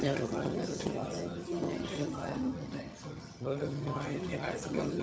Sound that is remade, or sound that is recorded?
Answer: remade